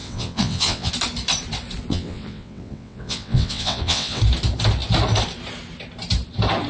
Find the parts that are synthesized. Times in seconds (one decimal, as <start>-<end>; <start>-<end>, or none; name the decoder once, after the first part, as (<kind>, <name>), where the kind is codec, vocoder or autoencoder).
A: 0.0-0.9 (vocoder, WaveNeXt); 1.9-4.2